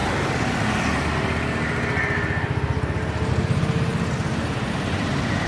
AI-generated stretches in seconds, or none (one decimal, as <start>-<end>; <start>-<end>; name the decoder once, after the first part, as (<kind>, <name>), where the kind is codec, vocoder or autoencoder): none